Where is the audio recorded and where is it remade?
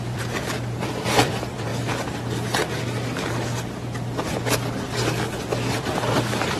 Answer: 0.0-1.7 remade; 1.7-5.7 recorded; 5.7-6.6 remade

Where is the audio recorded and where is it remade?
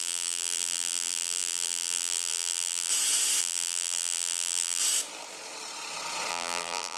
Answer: 0.0-2.9 remade; 2.9-3.4 recorded; 3.4-4.8 remade; 4.8-6.3 recorded; 6.3-7.0 remade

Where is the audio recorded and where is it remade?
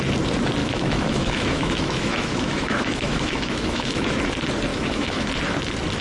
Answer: 0.0-0.6 recorded; 0.6-4.2 remade; 4.2-4.7 recorded; 4.7-5.3 remade; 5.3-6.0 recorded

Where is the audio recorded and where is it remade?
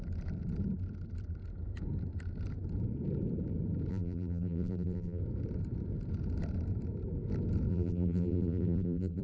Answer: 0.0-3.9 recorded; 3.9-5.2 remade; 5.2-7.7 recorded; 7.7-9.2 remade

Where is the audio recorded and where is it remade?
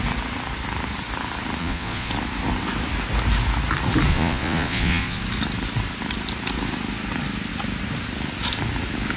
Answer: 0.0-1.6 recorded; 1.6-2.1 remade; 2.1-4.1 recorded; 4.1-5.2 remade; 5.2-9.2 recorded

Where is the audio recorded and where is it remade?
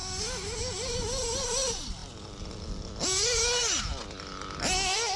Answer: 0.0-5.2 recorded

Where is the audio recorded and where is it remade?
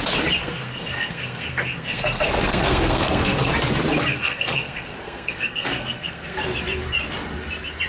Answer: 0.0-0.4 recorded; 0.4-3.5 remade; 3.5-4.1 recorded; 4.1-6.4 remade; 6.4-7.9 recorded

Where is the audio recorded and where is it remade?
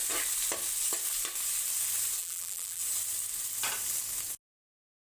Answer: 0.0-2.2 recorded; 2.2-2.8 remade; 2.8-5.0 recorded